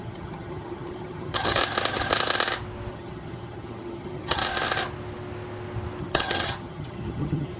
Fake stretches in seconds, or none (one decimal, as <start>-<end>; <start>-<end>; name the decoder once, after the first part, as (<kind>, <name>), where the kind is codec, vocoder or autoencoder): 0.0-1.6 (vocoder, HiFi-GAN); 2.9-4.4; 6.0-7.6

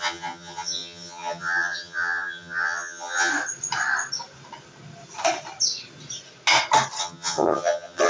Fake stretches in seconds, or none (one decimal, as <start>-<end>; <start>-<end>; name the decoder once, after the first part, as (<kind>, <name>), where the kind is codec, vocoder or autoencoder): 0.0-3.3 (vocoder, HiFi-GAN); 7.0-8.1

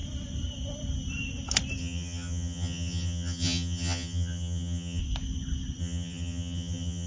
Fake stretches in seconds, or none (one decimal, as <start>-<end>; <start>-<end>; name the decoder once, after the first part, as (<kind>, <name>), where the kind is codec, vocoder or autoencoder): 1.8-5.0 (vocoder, HiFi-GAN); 5.8-7.1